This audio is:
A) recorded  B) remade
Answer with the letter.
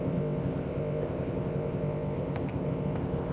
B